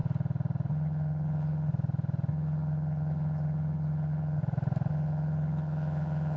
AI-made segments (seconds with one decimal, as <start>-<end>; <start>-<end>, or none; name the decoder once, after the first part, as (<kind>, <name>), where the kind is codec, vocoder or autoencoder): 0.7-1.7 (vocoder, HiFi-GAN); 2.3-4.4; 4.9-6.4